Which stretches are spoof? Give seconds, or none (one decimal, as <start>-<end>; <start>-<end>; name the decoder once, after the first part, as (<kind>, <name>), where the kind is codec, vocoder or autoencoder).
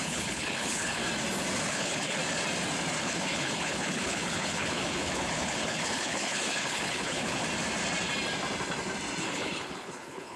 0.0-1.0 (codec, HILCodec); 1.7-2.2; 3.0-7.4; 9.2-10.4